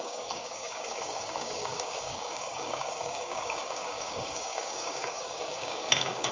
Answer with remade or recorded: remade